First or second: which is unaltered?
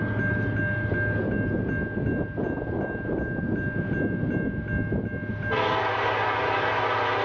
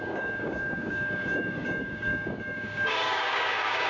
first